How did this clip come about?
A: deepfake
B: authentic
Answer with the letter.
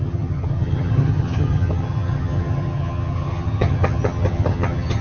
A